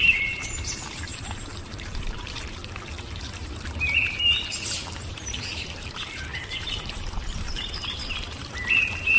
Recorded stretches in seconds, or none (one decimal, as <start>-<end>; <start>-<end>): 2.6-3.2; 4.2-5.0

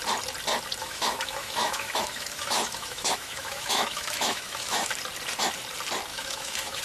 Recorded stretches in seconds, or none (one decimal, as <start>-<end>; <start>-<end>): 0.0-0.8; 4.9-6.1